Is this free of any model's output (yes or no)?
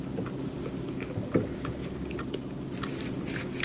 yes